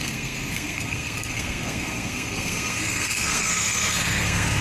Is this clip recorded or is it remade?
remade